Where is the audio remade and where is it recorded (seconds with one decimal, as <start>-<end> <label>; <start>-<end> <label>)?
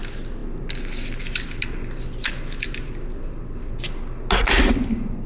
0.0-5.3 recorded